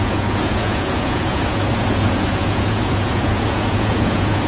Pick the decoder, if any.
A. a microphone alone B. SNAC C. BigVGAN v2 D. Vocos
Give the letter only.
D